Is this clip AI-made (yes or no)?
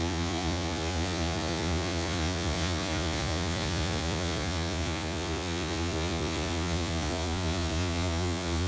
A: yes